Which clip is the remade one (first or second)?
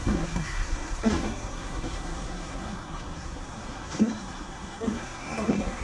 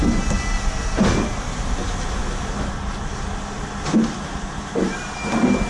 first